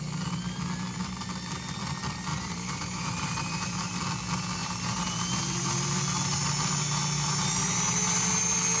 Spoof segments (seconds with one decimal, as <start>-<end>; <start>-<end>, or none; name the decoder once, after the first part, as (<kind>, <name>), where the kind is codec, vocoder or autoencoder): 2.3-4.0 (vocoder, BigVGAN v2); 4.6-5.9